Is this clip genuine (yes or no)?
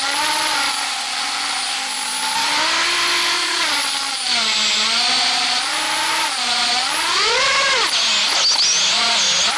yes